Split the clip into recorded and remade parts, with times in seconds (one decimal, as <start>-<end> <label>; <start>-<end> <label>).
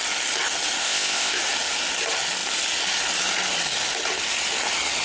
0.0-0.8 recorded; 0.8-1.4 remade; 1.4-5.0 recorded